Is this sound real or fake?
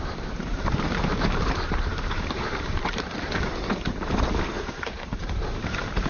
fake